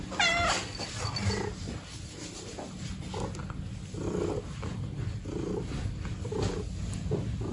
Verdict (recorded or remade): recorded